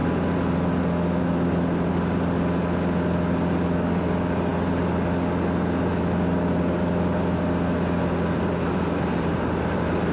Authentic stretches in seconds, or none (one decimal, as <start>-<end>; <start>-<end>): 0.0-10.1